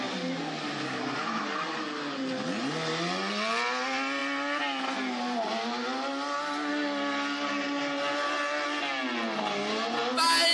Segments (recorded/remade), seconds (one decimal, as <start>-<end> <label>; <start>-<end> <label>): 0.0-10.5 recorded